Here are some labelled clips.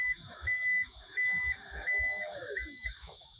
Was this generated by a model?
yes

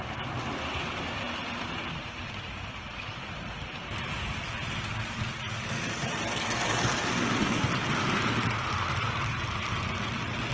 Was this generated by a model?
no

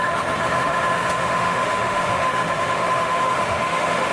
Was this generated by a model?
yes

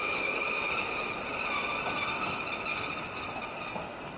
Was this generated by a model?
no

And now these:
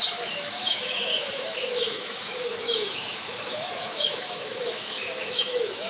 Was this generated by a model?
yes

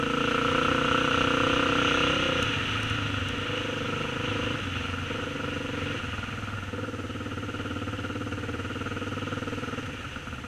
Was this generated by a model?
no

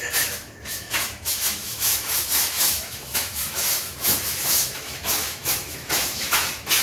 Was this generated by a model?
yes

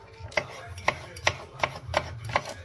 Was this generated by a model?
no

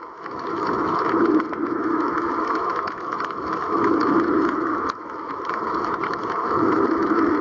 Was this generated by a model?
yes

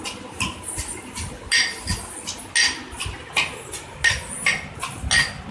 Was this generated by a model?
no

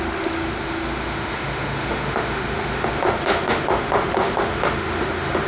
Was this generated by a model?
yes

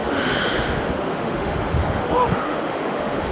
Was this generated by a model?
yes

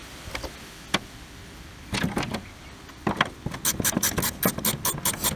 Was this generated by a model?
no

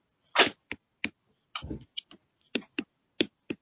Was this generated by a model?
no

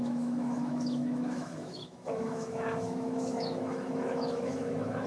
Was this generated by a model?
yes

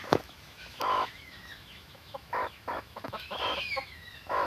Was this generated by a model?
yes